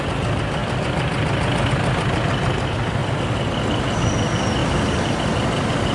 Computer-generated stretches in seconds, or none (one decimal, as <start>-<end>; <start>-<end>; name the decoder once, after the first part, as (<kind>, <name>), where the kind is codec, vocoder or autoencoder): 0.0-3.0 (vocoder, BigVGAN v2); 3.9-5.9